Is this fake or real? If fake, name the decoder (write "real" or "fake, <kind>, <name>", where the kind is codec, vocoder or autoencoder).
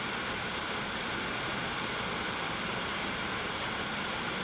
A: real